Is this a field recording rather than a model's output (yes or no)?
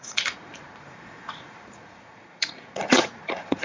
no